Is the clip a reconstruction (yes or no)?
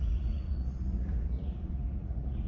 yes